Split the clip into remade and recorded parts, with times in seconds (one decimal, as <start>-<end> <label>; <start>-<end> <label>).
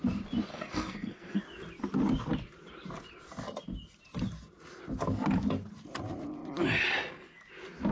0.0-0.5 recorded; 0.5-1.4 remade; 1.4-7.9 recorded